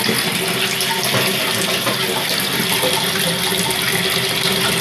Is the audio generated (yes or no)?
no